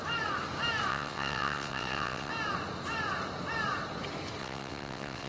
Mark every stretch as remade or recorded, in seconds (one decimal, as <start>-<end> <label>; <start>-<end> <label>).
0.0-0.9 recorded; 0.9-2.3 remade; 2.3-4.4 recorded; 4.4-5.3 remade

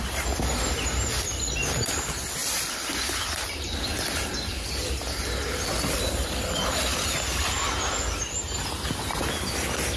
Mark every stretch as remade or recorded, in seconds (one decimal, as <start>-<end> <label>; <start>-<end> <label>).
0.0-10.0 recorded